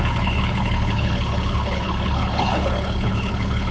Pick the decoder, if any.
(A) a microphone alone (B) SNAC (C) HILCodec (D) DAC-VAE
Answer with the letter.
C